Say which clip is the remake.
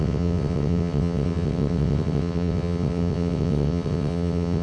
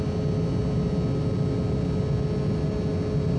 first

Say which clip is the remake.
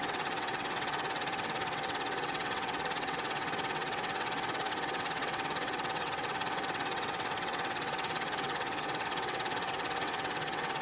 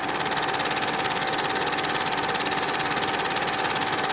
first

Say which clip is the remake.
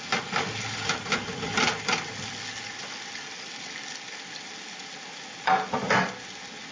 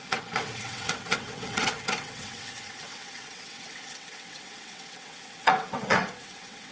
second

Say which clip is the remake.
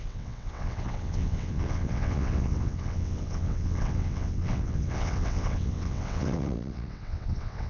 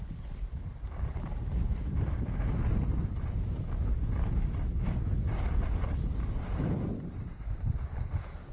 first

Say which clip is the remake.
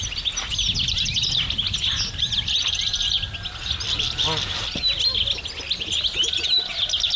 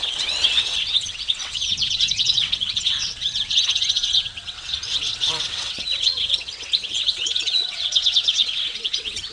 second